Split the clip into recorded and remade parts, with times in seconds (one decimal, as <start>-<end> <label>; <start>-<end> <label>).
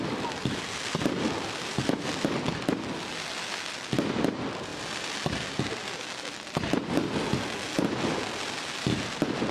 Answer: 0.0-4.7 recorded; 4.7-6.0 remade; 6.0-9.5 recorded